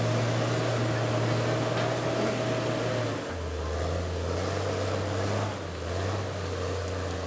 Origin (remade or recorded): recorded